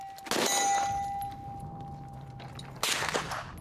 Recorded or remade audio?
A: recorded